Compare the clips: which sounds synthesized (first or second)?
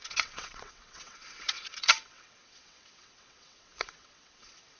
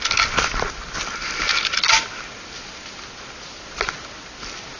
first